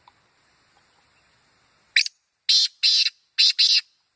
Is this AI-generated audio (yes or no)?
no